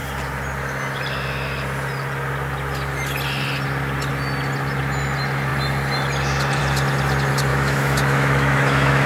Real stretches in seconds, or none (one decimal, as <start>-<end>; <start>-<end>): 0.0-7.5